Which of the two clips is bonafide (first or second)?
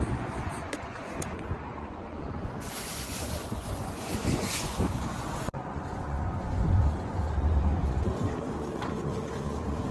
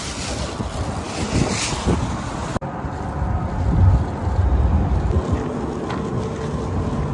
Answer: second